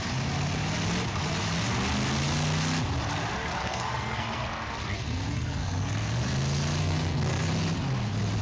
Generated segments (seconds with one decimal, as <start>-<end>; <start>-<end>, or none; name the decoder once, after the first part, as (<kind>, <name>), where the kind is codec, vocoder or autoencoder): 3.6-6.1 (codec, SNAC); 6.8-7.5